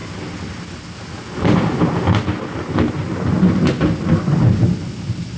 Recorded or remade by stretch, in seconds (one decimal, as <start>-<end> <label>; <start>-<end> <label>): 0.0-5.4 recorded